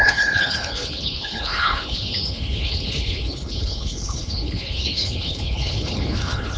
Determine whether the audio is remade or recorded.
remade